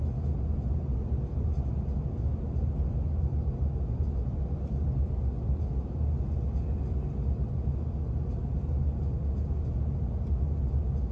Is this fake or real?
real